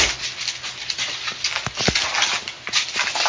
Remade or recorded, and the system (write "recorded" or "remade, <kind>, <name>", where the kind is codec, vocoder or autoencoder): recorded